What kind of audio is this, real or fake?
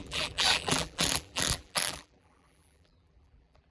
fake